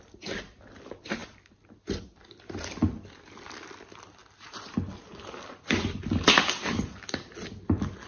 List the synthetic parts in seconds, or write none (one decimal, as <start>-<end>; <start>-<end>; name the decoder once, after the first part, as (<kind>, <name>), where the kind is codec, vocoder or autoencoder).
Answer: none